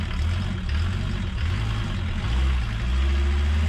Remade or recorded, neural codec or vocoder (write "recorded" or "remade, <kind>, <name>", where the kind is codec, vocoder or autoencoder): recorded